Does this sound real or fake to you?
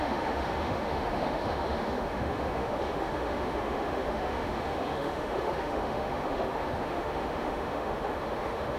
fake